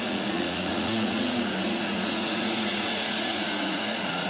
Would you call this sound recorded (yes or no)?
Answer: no